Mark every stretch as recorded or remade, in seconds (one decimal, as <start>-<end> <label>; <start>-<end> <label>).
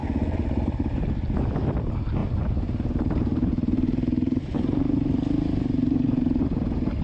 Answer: 0.0-2.2 recorded; 2.2-6.4 remade; 6.4-7.0 recorded